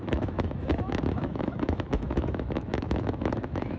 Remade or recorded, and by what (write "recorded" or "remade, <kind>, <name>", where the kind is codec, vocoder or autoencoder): remade, autoencoder, DAC-VAE